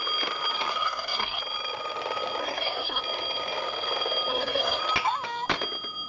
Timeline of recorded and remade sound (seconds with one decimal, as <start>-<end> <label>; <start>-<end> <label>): 0.0-0.7 recorded; 0.7-1.4 remade; 1.4-2.4 recorded; 2.4-3.0 remade; 3.0-4.3 recorded; 4.3-4.8 remade; 4.8-6.1 recorded